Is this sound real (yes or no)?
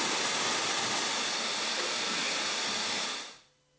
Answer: yes